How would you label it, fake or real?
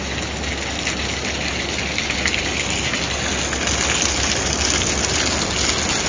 real